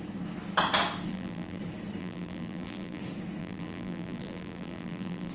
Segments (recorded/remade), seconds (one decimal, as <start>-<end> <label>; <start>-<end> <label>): 0.0-1.1 recorded; 1.1-1.6 remade; 1.6-2.0 recorded; 2.0-3.0 remade; 3.0-3.4 recorded; 3.4-5.3 remade

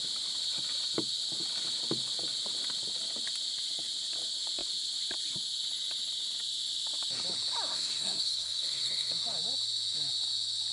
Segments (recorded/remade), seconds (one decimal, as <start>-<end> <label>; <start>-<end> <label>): 0.0-7.7 recorded; 7.7-9.1 remade; 9.1-10.7 recorded

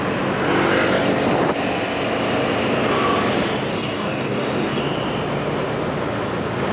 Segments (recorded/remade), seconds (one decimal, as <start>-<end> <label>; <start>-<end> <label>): 0.0-3.7 recorded; 3.7-4.8 remade; 4.8-6.7 recorded

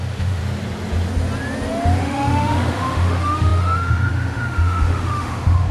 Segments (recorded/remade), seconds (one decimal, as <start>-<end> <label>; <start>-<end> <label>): 0.0-0.4 remade; 0.4-2.0 recorded; 2.0-5.7 remade

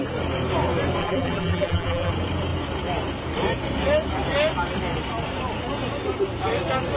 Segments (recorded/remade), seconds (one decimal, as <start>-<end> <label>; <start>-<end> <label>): 0.0-1.0 recorded; 1.0-2.1 remade; 2.1-7.0 recorded

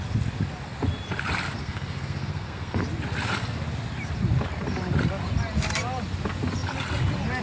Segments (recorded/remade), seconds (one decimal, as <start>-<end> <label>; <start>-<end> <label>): 0.0-1.6 recorded; 1.6-2.8 remade; 2.8-7.4 recorded

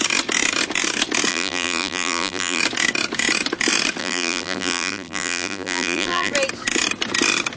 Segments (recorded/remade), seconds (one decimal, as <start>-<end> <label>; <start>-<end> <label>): 0.0-1.3 recorded; 1.3-2.6 remade; 2.6-4.0 recorded; 4.0-6.3 remade; 6.3-7.6 recorded

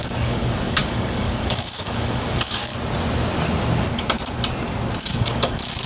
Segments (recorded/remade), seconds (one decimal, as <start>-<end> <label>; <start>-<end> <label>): 0.0-2.7 remade; 2.7-5.0 recorded; 5.0-5.9 remade